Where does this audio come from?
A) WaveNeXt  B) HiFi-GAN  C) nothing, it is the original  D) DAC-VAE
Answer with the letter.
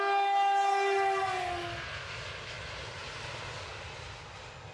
C